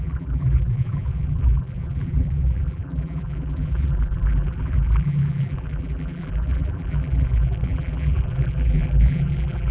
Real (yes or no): no